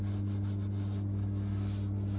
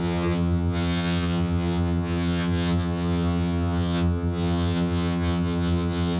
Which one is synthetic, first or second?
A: second